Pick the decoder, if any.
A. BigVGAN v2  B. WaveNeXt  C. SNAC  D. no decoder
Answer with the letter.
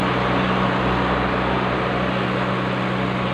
D